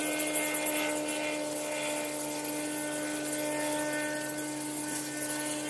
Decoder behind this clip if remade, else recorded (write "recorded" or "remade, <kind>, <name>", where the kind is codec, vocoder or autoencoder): recorded